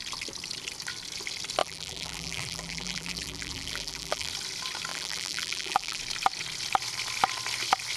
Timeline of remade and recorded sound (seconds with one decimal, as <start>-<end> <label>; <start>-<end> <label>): 0.0-1.6 recorded; 1.6-4.3 remade; 4.3-4.9 recorded; 4.9-6.0 remade; 6.0-8.0 recorded